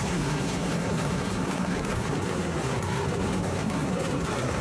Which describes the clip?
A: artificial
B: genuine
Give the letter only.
A